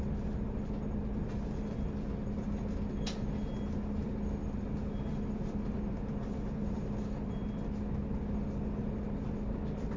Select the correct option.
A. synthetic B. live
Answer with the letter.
B